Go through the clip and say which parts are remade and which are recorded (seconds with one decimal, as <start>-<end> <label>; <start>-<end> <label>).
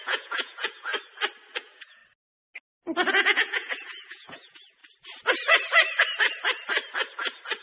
0.0-0.9 remade; 0.9-1.6 recorded; 1.6-2.0 remade; 2.0-3.1 recorded; 3.1-4.8 remade; 4.8-7.6 recorded